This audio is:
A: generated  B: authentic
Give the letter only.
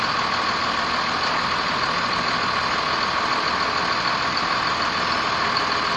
B